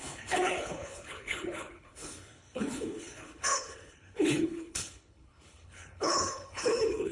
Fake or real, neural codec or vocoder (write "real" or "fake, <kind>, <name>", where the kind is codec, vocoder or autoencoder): fake, codec, HILCodec